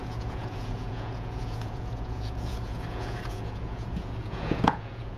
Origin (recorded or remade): remade